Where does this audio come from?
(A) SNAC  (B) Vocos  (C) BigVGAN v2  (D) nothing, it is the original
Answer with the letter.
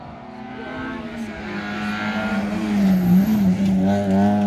D